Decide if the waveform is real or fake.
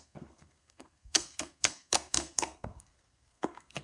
fake